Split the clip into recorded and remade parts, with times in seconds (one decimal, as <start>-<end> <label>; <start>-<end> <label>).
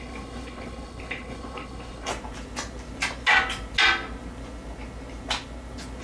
0.0-2.1 remade; 2.1-6.0 recorded